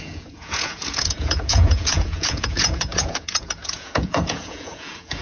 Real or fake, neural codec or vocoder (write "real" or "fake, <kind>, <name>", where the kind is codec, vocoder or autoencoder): fake, vocoder, Vocos